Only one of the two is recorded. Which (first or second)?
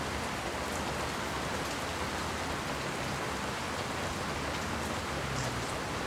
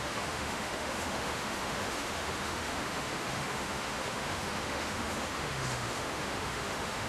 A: first